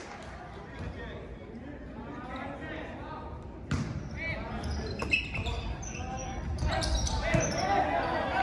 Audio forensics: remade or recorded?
recorded